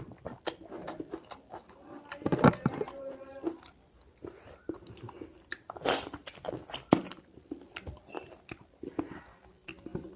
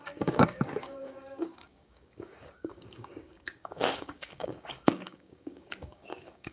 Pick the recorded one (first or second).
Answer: first